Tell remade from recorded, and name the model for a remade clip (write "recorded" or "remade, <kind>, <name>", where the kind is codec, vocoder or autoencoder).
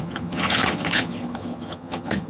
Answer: remade, vocoder, HiFi-GAN